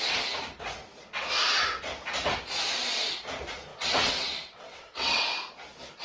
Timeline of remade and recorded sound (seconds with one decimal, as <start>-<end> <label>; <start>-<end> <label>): 0.0-3.7 recorded; 3.7-5.2 remade; 5.2-6.0 recorded